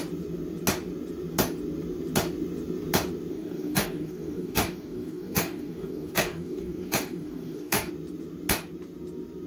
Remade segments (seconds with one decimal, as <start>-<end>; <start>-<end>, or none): 3.3-7.9